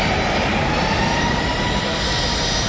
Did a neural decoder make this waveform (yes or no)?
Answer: no